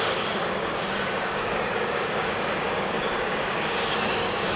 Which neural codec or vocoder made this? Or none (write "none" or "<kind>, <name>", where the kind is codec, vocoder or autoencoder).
codec, DAC